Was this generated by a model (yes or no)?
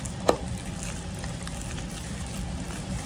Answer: yes